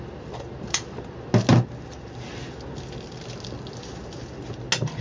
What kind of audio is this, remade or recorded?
recorded